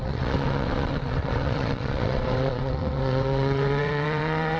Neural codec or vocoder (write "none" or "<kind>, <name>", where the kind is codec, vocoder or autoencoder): vocoder, WaveNeXt